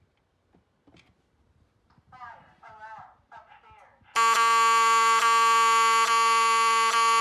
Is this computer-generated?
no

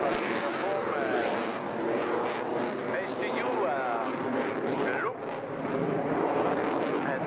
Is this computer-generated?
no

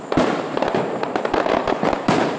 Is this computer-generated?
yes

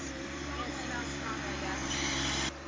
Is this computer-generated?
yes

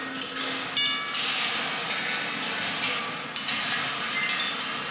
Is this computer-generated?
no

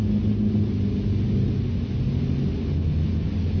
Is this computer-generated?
no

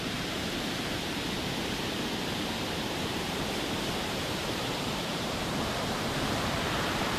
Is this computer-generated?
yes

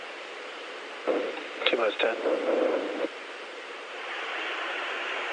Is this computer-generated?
yes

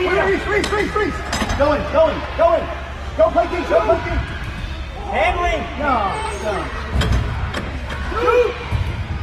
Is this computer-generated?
no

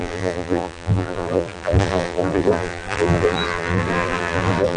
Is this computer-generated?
yes